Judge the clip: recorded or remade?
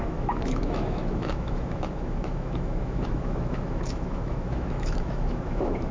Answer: remade